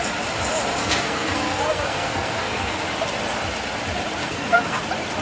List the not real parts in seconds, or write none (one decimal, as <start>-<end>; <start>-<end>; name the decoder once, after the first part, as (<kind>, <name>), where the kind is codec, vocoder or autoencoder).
0.8-2.8 (codec, SNAC); 4.2-4.8

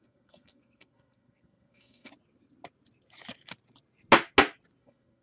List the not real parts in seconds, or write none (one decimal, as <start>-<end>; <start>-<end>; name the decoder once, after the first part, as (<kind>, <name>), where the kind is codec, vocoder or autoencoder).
0.0-2.1 (codec, SNAC); 4.8-5.2